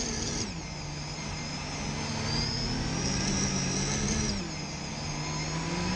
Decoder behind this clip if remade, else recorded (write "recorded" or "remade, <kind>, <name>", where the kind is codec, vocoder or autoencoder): recorded